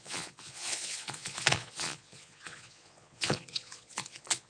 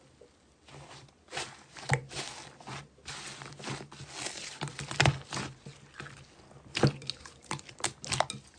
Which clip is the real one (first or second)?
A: second